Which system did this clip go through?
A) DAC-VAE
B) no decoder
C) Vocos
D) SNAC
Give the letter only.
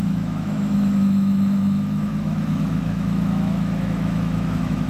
A